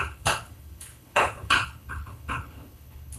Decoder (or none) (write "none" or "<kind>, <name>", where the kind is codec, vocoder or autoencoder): codec, HILCodec